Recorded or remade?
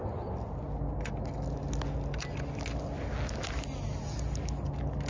recorded